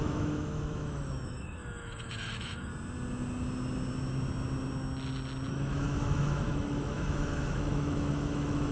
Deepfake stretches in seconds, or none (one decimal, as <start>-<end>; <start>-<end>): 0.0-2.7; 5.5-8.7